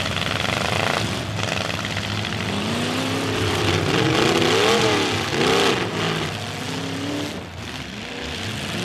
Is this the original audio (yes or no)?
yes